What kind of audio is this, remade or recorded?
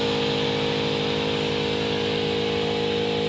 recorded